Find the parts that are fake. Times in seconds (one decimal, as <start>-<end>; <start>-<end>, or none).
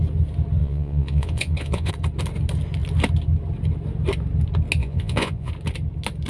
0.6-1.9; 4.8-5.5